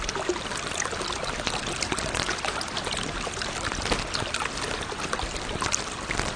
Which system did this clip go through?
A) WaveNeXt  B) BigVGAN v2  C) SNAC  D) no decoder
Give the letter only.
D